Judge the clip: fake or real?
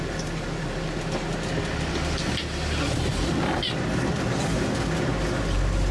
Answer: real